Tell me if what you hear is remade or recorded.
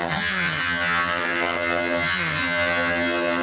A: remade